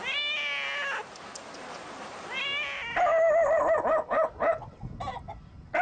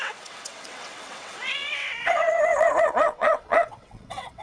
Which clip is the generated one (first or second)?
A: second